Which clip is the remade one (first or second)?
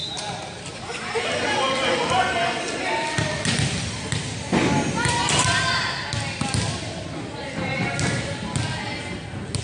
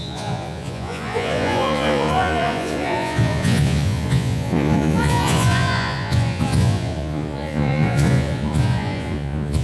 second